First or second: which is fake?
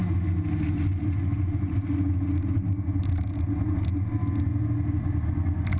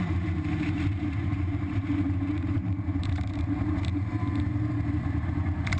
second